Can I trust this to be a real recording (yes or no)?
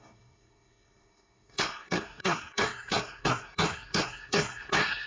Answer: no